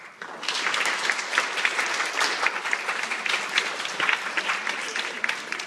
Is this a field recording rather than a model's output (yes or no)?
yes